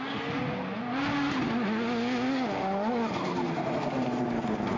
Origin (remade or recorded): recorded